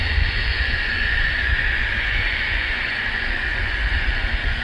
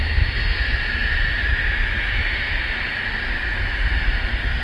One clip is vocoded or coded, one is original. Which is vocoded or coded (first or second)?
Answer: first